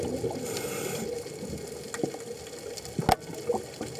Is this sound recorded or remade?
recorded